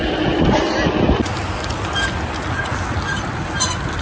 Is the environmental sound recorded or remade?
recorded